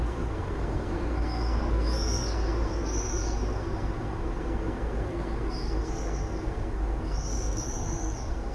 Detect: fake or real fake